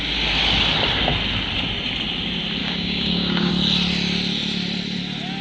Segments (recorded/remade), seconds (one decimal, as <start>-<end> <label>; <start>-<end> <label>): 0.0-2.6 recorded; 2.6-3.5 remade; 3.5-5.4 recorded

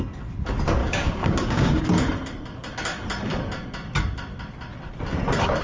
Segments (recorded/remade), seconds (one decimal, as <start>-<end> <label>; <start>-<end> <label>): 0.0-0.8 recorded; 0.8-1.8 remade; 1.8-5.6 recorded

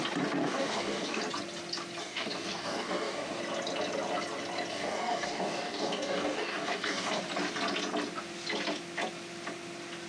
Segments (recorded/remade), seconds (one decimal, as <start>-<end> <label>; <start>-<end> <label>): 0.0-0.4 recorded; 0.4-1.2 remade; 1.2-2.0 recorded; 2.0-3.4 remade; 3.4-4.7 recorded; 4.7-7.2 remade; 7.2-10.1 recorded

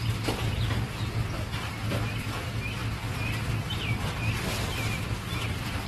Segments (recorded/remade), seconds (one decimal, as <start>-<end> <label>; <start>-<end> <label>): 0.0-5.9 recorded